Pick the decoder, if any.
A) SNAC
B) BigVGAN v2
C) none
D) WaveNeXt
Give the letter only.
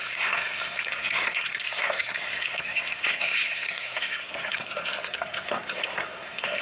A